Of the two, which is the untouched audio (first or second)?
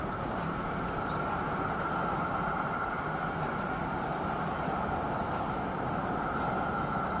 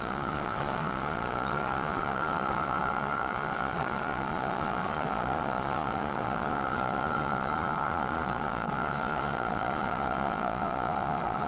first